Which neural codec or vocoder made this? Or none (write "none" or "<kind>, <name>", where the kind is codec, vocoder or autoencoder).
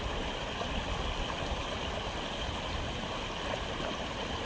none